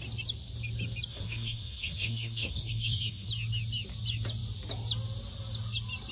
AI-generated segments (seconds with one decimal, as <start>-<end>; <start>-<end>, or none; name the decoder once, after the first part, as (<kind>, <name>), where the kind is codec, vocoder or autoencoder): 1.1-3.3 (codec, SNAC)